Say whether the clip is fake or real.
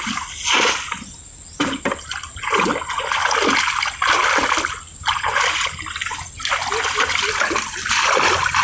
real